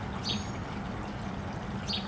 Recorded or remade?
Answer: recorded